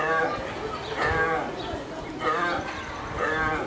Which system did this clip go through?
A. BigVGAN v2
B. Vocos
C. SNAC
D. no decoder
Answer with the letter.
D